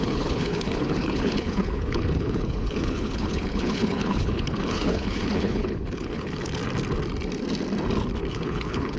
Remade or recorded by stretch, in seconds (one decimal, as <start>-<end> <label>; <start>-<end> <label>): 0.0-6.6 remade; 6.6-8.3 recorded; 8.3-9.0 remade